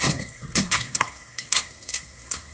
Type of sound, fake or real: fake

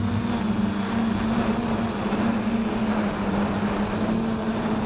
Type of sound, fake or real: real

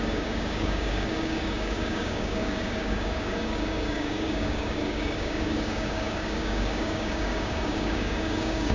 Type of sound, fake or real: fake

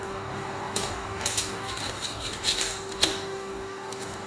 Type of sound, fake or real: fake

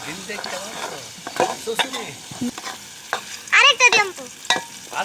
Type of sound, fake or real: real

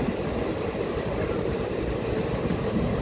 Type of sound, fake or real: real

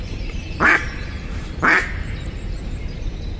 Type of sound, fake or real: fake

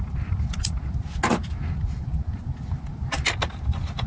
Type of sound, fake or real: real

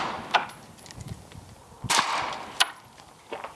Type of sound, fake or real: real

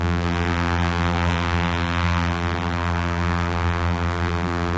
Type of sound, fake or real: fake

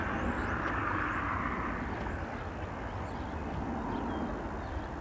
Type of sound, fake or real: real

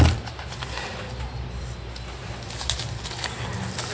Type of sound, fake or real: real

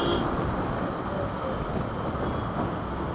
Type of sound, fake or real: real